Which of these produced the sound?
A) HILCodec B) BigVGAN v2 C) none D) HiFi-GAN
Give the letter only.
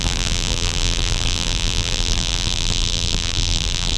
B